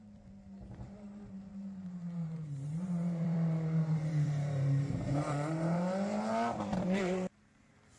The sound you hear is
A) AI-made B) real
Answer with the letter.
A